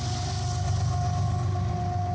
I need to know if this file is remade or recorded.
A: recorded